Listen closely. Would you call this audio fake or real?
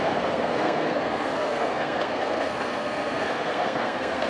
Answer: fake